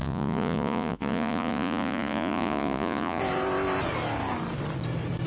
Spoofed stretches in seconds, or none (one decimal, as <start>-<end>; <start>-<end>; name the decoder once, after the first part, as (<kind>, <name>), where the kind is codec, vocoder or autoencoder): 0.0-3.2 (vocoder, Vocos)